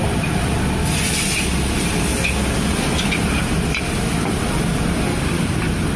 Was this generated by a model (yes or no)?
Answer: no